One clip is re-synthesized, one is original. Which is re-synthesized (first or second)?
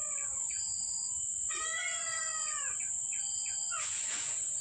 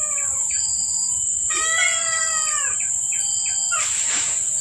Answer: first